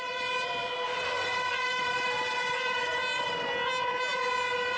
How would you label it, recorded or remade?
recorded